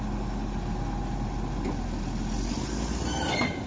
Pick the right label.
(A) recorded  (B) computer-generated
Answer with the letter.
A